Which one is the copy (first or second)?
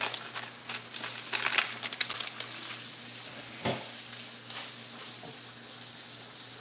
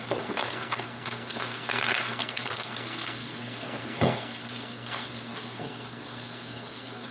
second